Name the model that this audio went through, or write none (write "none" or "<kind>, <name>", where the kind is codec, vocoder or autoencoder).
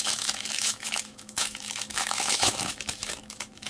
autoencoder, DAC-VAE